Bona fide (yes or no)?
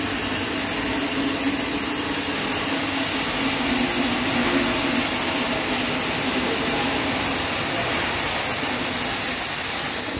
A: yes